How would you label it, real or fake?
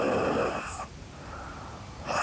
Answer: fake